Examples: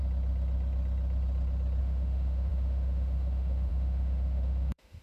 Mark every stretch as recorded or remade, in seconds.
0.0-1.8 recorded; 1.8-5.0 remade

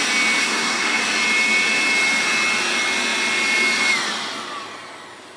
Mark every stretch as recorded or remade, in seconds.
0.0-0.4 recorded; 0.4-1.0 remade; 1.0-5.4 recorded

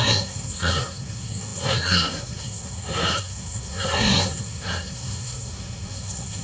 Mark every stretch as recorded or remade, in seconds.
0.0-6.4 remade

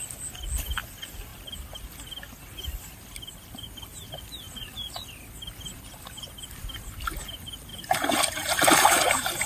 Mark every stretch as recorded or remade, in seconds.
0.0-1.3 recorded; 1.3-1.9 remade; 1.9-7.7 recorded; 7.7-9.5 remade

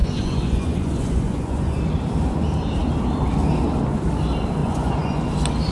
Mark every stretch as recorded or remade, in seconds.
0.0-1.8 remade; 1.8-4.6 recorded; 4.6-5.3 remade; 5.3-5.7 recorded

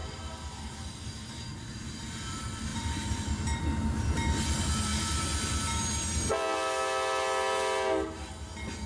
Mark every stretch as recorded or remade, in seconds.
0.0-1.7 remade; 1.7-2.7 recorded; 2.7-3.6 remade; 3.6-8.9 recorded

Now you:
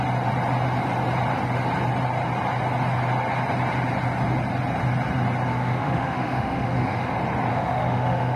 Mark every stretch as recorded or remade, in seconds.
0.0-5.5 recorded; 5.5-7.1 remade; 7.1-7.5 recorded; 7.5-8.4 remade